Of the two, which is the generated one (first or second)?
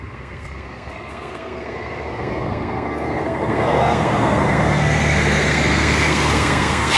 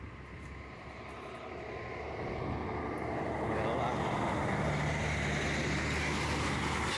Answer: first